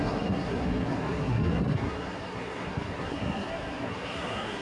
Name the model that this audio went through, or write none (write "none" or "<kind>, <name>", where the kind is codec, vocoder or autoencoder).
codec, SNAC